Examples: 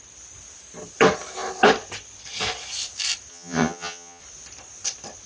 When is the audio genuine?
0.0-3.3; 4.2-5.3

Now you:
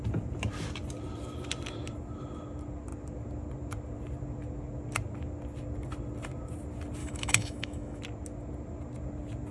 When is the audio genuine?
0.0-7.0; 8.0-9.5

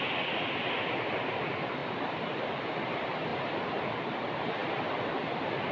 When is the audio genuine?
0.0-1.8; 2.6-4.6

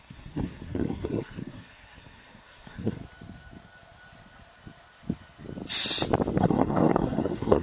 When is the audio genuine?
3.0-6.4

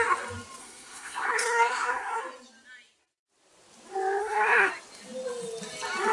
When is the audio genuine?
0.0-0.6; 2.2-4.2; 4.7-6.1

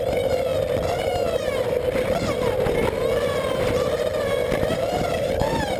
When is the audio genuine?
0.0-4.4

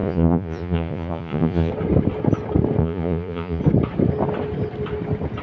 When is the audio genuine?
1.7-2.8; 3.6-5.4

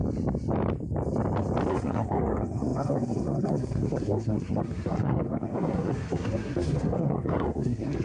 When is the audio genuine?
0.0-1.7